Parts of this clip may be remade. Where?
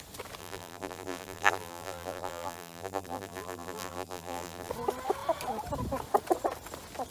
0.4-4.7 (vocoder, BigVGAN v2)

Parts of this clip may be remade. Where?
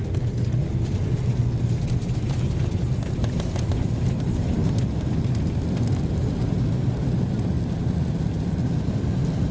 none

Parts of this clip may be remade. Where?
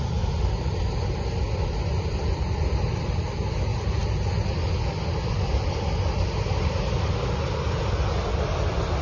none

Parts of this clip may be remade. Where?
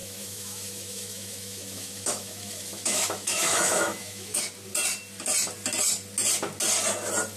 0.0-4.4 (autoencoder, DAC-VAE)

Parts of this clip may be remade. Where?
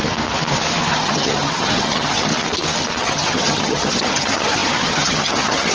0.9-2.3 (vocoder, HiFi-GAN); 3.0-5.7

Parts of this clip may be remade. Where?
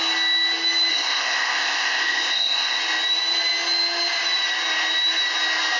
0.9-2.8 (codec, ZipCodec)